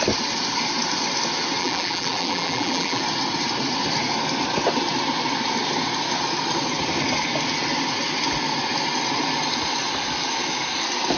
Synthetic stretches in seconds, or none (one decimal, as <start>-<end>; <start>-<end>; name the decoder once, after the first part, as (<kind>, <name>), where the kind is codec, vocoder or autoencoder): 1.6-3.0 (vocoder, BigVGAN v2)